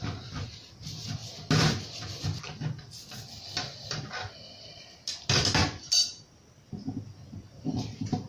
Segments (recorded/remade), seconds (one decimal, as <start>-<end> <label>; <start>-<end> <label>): 0.0-8.3 recorded